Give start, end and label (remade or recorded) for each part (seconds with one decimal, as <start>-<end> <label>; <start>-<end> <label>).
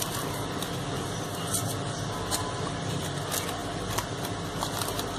0.0-5.2 recorded